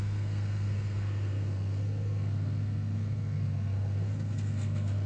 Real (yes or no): no